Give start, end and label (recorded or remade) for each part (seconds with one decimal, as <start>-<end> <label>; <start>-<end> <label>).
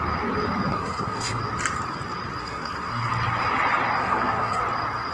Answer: 0.0-0.7 recorded; 0.7-1.4 remade; 1.4-2.4 recorded; 2.4-3.1 remade; 3.1-4.0 recorded; 4.0-4.6 remade; 4.6-5.1 recorded